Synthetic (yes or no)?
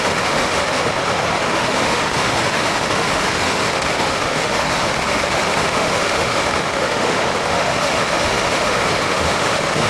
yes